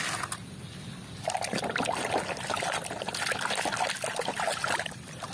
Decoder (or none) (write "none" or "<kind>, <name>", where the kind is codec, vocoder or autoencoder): none